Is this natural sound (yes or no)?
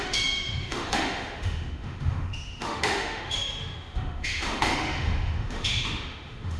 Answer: no